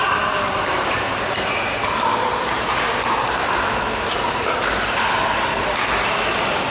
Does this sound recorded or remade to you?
recorded